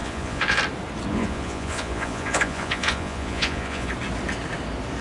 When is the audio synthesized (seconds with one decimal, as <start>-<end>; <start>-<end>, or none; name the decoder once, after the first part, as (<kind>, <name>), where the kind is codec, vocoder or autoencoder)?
0.0-0.6 (vocoder, Vocos); 1.1-3.9